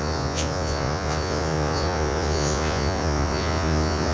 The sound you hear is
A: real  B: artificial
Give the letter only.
B